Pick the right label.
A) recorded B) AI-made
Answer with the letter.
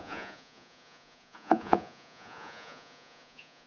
B